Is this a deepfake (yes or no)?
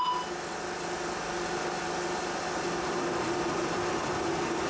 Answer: no